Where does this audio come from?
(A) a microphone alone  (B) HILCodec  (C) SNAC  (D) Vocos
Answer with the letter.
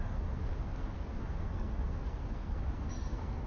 C